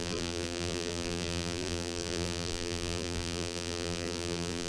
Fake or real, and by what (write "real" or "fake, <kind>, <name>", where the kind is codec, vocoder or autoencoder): fake, vocoder, BigVGAN v2